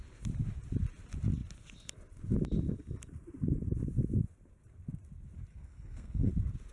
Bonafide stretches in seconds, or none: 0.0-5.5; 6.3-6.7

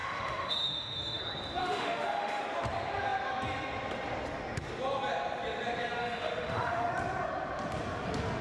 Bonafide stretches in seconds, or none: 1.2-1.6; 2.4-6.0; 6.9-8.4

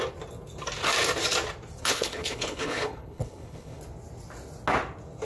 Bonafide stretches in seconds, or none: 0.0-1.8; 3.8-5.2

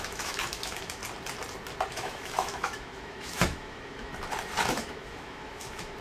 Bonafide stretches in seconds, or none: 1.0-1.9; 4.1-4.6

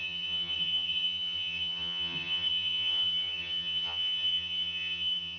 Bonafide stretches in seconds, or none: none